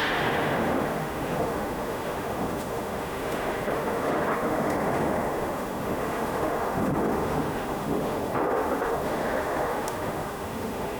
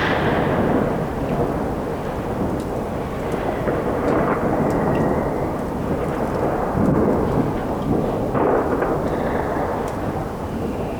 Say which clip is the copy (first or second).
first